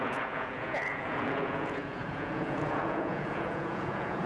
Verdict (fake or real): fake